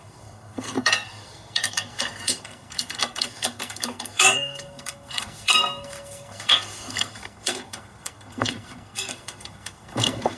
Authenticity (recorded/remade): remade